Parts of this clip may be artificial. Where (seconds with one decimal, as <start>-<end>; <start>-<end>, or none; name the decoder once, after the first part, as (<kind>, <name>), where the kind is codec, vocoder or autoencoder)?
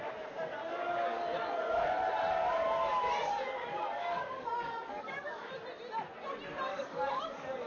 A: 0.7-1.6 (codec, DAC); 3.6-5.5; 6.7-7.2